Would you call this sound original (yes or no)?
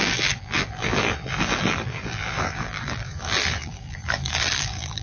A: no